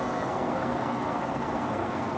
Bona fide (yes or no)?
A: no